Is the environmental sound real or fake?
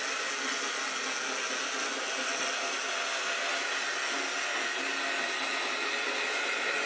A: real